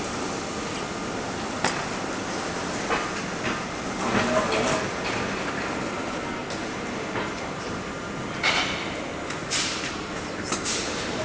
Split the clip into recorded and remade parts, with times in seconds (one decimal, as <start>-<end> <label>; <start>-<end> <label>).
0.0-6.4 recorded; 6.4-7.8 remade; 7.8-9.4 recorded; 9.4-11.2 remade